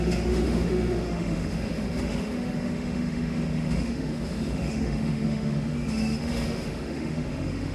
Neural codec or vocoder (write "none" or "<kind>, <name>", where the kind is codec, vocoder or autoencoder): autoencoder, DAC-VAE